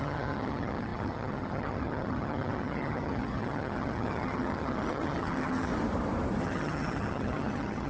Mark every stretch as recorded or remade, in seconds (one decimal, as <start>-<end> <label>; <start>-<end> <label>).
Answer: 0.0-5.7 remade; 5.7-6.4 recorded; 6.4-7.9 remade